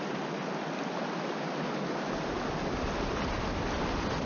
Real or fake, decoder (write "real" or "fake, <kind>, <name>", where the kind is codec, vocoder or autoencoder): real